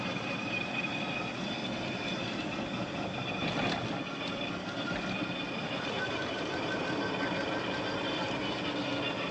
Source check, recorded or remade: recorded